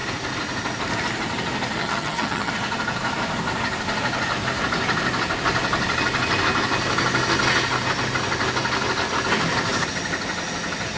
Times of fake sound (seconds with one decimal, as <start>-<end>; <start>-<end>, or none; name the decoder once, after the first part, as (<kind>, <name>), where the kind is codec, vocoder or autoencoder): 1.8-2.5 (vocoder, HiFi-GAN)

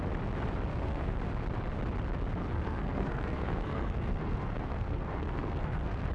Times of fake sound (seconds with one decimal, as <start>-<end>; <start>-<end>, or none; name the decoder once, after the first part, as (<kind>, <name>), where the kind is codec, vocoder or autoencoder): 0.7-1.2 (codec, SNAC); 2.4-6.1

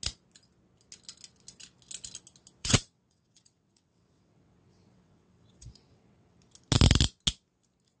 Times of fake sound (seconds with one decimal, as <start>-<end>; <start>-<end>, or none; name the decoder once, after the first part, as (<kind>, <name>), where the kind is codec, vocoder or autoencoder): 2.6-6.4 (vocoder, WaveNeXt)

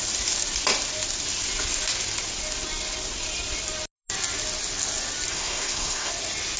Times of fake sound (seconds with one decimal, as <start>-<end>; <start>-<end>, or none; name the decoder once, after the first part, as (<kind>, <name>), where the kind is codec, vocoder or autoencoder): 5.3-6.1 (codec, SNAC)